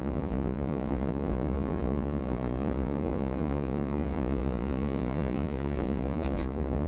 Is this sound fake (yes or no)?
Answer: yes